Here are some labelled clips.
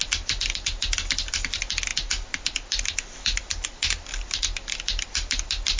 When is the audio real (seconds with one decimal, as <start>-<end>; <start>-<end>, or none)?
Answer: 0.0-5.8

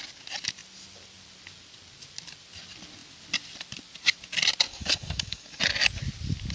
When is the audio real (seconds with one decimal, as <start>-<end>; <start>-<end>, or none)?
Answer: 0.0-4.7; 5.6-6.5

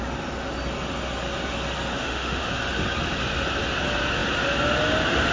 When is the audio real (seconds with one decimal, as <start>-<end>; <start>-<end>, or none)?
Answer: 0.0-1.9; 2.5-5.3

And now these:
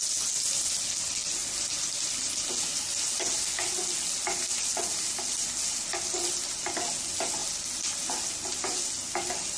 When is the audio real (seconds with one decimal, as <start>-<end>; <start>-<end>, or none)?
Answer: 0.0-9.6